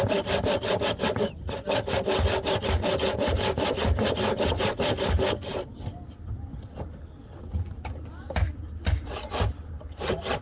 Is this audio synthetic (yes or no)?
no